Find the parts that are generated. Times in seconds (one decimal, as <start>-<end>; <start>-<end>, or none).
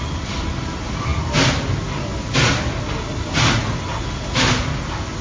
none